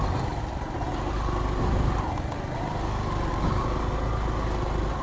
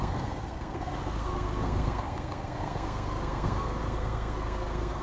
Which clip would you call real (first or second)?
first